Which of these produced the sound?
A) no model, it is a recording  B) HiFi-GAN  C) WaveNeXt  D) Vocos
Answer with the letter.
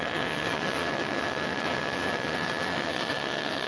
C